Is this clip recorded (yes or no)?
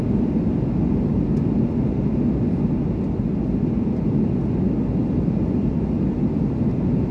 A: yes